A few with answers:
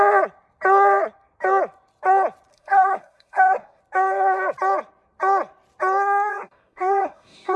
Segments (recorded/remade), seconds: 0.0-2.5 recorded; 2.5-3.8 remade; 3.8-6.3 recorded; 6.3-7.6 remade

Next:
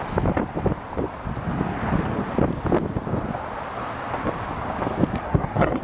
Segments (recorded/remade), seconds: 0.0-5.2 recorded; 5.2-5.8 remade

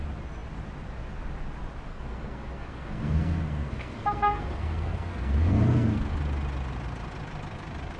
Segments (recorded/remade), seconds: 0.0-1.9 recorded; 1.9-6.0 remade; 6.0-8.0 recorded

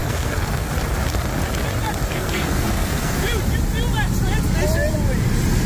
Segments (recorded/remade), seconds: 0.0-0.7 remade; 0.7-2.1 recorded; 2.1-3.2 remade; 3.2-5.7 recorded

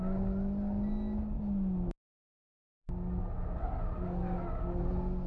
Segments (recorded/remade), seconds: 0.0-5.3 recorded

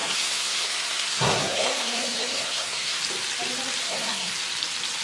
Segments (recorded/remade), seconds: 0.0-3.0 remade; 3.0-3.8 recorded; 3.8-4.3 remade; 4.3-5.0 recorded

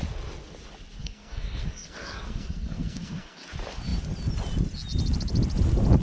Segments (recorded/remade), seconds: 0.0-1.0 recorded; 1.0-3.4 remade; 3.4-6.0 recorded